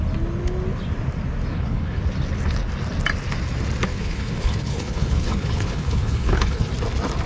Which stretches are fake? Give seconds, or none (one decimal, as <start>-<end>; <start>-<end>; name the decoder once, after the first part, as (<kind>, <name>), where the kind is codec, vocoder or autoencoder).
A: 1.5-2.0 (codec, HILCodec); 3.9-6.7